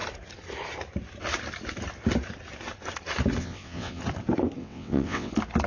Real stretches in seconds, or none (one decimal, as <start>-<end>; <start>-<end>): 0.0-3.4; 4.0-4.6; 5.3-5.7